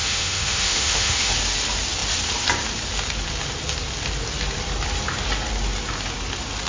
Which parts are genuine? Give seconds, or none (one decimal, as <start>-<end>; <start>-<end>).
1.3-6.7